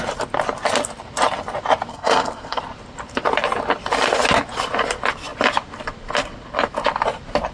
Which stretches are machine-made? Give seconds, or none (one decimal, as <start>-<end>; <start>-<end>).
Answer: 1.9-2.6